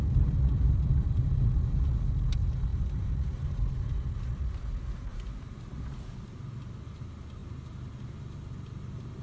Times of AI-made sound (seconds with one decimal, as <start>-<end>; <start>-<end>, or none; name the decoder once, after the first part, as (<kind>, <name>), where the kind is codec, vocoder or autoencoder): 2.7-3.7 (vocoder, BigVGAN v2); 5.1-5.7